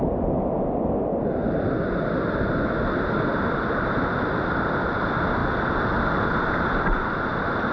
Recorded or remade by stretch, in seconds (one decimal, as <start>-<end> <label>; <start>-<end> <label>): 0.0-7.7 recorded